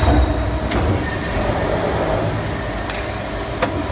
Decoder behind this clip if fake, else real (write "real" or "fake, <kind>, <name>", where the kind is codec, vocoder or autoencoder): real